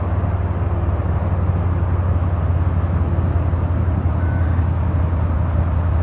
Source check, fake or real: real